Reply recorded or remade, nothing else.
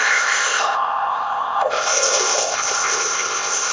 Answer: remade